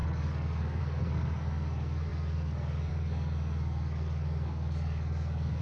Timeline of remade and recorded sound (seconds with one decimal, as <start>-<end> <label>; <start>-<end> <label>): 0.0-5.6 remade